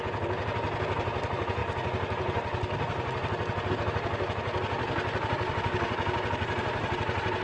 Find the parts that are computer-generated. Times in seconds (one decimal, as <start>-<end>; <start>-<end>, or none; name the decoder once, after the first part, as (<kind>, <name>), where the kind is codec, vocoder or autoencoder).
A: none